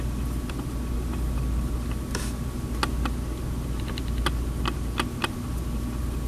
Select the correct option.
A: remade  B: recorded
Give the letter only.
B